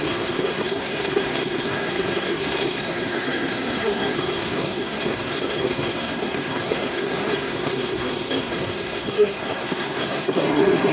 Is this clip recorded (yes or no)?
no